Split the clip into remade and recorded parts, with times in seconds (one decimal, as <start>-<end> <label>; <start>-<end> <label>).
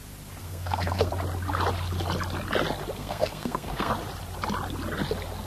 0.0-0.4 recorded; 0.4-1.1 remade; 1.1-3.0 recorded; 3.0-3.9 remade; 3.9-5.5 recorded